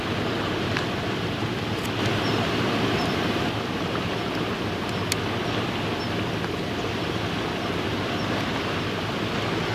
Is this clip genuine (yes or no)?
yes